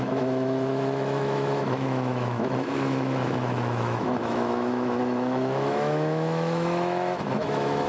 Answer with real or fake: fake